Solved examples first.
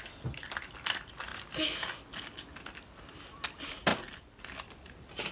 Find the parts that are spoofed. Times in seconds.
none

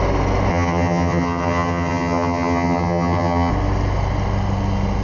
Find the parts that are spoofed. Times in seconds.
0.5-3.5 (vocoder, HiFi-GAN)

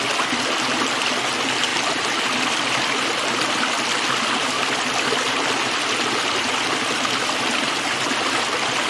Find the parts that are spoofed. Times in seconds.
none

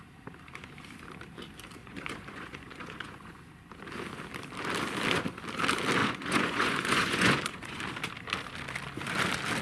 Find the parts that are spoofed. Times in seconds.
1.8-3.5 (vocoder, Vocos); 6.0-7.8

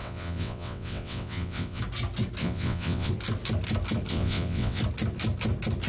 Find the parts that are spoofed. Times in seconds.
0.0-1.8 (vocoder, WaveNeXt); 2.4-3.1; 4.1-4.8

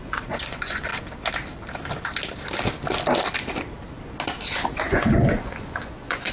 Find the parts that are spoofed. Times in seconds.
0.0-0.9 (vocoder, Vocos); 4.7-6.3